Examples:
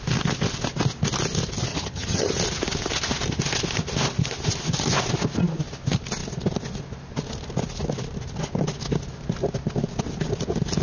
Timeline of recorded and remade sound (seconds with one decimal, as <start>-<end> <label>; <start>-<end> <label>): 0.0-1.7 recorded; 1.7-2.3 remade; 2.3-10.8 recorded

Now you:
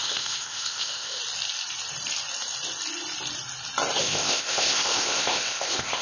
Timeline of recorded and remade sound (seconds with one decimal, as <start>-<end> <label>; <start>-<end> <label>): 0.0-1.2 remade; 1.2-4.0 recorded; 4.0-6.0 remade

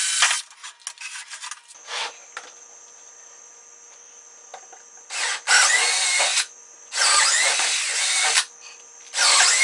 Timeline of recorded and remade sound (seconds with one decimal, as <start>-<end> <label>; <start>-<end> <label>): 0.0-6.3 recorded; 6.3-7.0 remade; 7.0-9.6 recorded

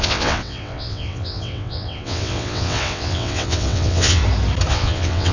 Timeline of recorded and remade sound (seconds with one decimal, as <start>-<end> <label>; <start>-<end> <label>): 0.0-4.2 remade; 4.2-4.7 recorded; 4.7-5.3 remade